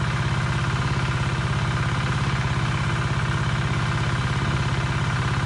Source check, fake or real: real